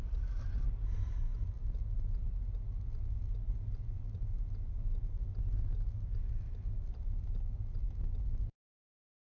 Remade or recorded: recorded